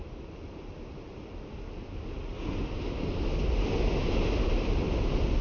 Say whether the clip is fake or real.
real